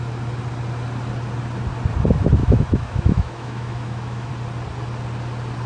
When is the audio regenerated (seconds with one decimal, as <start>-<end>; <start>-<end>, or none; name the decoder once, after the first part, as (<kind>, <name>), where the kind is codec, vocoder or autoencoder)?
2.4-4.3 (autoencoder, DAC-VAE)